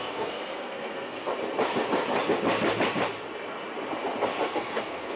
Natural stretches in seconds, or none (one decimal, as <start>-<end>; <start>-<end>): 1.3-4.4